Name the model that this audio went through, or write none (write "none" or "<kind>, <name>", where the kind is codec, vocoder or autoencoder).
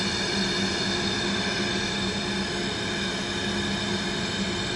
none